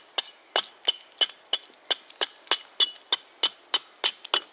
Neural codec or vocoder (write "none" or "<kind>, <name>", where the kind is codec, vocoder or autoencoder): none